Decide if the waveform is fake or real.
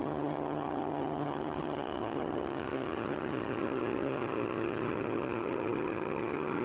fake